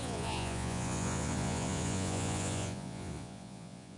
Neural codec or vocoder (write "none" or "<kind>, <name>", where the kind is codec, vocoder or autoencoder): vocoder, Vocos